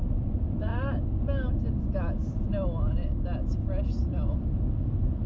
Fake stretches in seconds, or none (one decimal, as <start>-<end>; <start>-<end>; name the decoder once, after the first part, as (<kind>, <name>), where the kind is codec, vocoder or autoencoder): 0.0-0.7 (vocoder, BigVGAN v2); 3.9-5.3

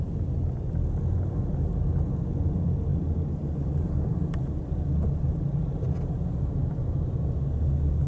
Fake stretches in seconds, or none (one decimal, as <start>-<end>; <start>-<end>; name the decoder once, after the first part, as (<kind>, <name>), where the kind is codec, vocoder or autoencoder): 2.9-7.1 (vocoder, BigVGAN v2)